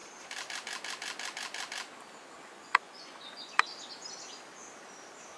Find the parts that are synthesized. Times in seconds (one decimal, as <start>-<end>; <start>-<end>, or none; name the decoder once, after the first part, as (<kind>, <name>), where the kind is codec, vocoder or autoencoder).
2.2-3.7 (vocoder, Vocos)